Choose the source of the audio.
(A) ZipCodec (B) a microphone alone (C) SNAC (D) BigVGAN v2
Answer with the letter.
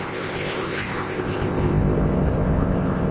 A